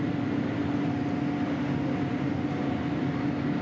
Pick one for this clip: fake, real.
real